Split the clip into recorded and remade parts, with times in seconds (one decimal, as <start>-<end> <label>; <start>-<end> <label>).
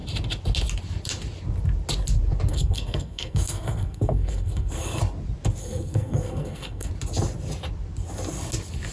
0.0-2.5 recorded; 2.5-5.0 remade; 5.0-5.6 recorded; 5.6-6.9 remade; 6.9-8.9 recorded